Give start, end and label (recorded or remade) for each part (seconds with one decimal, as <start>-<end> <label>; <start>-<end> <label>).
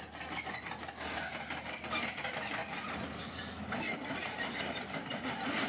0.0-5.7 remade